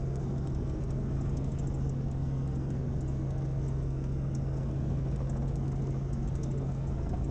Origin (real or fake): fake